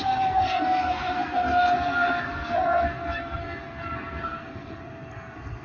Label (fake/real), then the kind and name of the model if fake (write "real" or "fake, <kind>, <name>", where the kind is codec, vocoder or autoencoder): fake, codec, SNAC